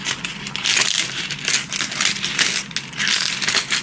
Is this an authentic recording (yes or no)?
yes